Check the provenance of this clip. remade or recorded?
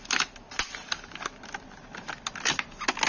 recorded